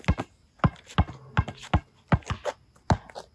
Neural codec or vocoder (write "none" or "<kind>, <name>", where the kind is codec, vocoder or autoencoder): none